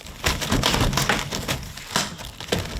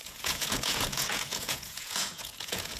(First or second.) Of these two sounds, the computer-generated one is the second